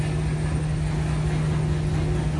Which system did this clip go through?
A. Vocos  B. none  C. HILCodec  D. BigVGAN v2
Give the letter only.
B